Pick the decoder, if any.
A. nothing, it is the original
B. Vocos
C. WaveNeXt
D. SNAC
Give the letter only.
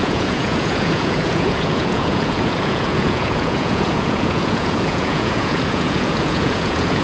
B